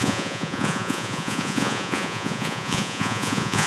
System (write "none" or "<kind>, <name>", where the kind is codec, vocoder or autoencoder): vocoder, Vocos